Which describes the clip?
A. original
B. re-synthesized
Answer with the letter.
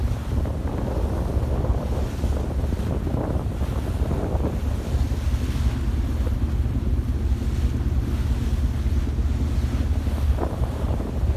A